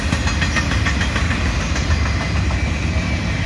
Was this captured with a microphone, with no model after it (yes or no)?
yes